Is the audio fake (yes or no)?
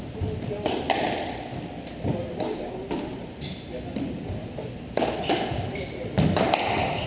no